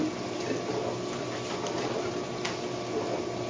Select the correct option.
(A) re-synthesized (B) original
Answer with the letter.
B